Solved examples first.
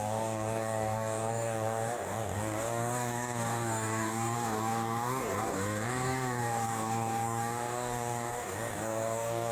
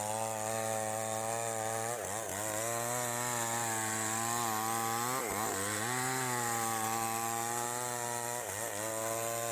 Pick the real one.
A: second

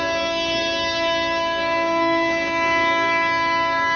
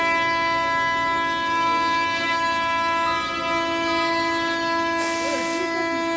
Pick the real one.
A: second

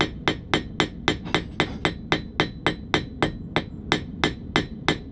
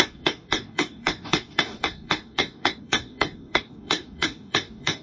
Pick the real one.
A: first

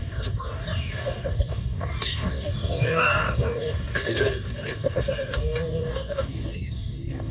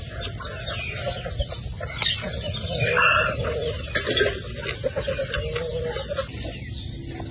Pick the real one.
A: second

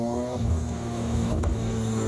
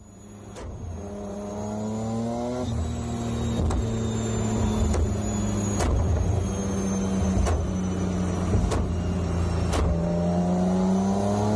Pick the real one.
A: second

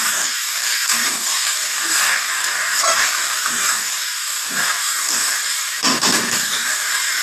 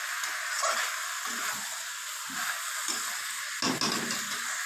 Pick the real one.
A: second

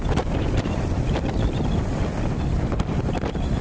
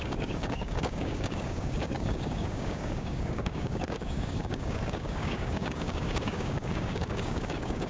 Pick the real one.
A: first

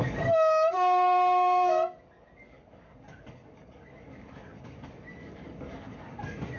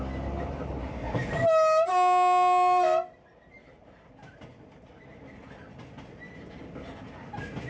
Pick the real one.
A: second